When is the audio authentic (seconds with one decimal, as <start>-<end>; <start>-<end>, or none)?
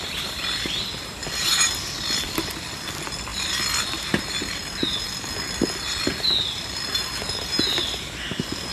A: 0.0-8.7